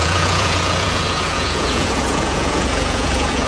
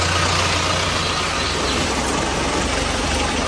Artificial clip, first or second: first